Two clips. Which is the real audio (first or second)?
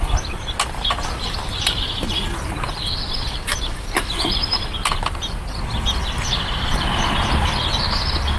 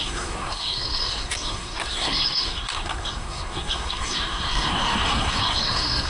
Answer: first